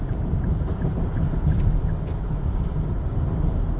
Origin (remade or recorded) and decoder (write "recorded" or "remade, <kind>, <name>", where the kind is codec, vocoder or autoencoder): recorded